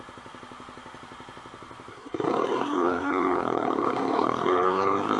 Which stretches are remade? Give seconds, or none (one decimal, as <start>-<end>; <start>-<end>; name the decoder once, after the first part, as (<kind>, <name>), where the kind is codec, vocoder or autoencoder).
1.9-5.2 (codec, SNAC)